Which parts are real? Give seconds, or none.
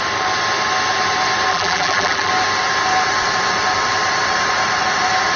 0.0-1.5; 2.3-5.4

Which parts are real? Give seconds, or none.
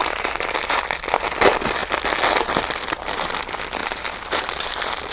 0.8-3.8